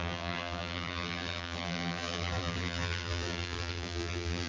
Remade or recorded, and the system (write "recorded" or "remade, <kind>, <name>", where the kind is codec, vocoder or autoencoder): remade, vocoder, BigVGAN v2